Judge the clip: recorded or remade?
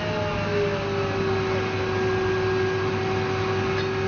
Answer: recorded